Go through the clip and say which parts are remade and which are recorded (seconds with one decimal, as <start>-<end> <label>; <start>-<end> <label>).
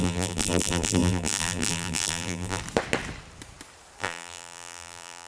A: 0.0-2.6 remade; 2.6-4.0 recorded; 4.0-5.3 remade